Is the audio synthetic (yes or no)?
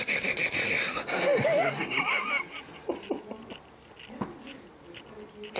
no